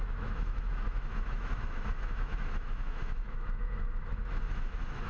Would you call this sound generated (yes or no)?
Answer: yes